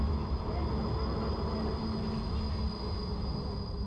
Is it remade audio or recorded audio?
recorded